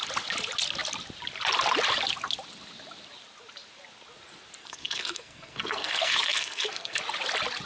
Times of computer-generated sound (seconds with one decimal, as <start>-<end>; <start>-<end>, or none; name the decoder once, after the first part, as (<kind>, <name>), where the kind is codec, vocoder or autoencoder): 4.6-7.0 (codec, SNAC)